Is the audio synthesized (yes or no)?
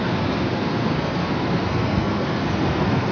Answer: yes